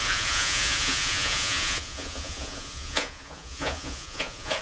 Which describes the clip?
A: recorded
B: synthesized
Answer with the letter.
B